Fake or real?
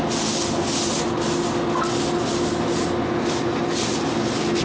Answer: real